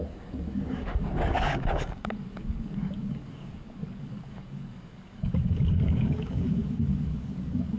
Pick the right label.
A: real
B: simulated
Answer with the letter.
B